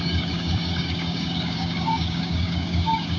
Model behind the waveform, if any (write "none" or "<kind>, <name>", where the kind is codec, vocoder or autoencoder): codec, DAC